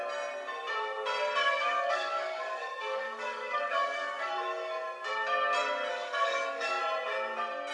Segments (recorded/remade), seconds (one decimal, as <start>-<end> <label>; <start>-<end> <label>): 0.0-1.4 recorded; 1.4-4.3 remade; 4.3-5.9 recorded; 5.9-6.8 remade; 6.8-7.7 recorded